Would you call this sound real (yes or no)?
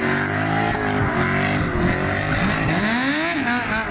yes